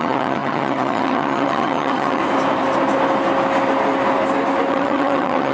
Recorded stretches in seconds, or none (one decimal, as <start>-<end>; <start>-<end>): 2.2-4.7

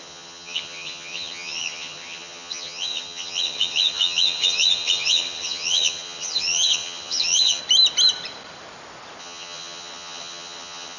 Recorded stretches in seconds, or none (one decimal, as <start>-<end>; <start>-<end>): 7.6-9.2

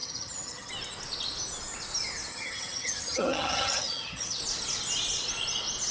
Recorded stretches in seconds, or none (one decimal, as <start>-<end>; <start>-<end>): 0.7-2.3; 4.4-5.9

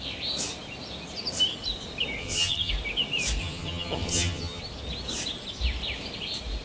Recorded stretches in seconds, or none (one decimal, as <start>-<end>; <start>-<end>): 0.0-2.2; 2.7-3.4; 4.6-6.6

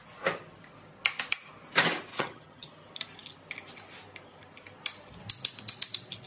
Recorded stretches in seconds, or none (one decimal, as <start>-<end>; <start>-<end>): 0.0-2.1; 2.7-6.3

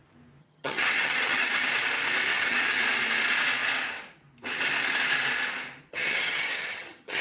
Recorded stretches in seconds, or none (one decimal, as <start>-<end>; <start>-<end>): 0.0-0.4; 1.5-2.3; 2.8-5.9

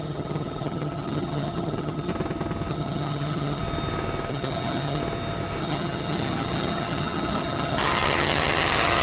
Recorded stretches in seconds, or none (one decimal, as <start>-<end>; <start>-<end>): 2.1-2.7; 3.6-4.3; 5.0-5.6

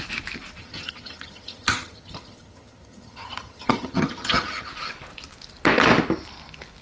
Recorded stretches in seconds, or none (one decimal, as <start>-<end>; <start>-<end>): 0.0-0.6; 4.7-6.8